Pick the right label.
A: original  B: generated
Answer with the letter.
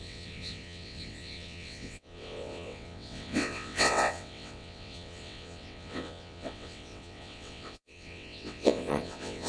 B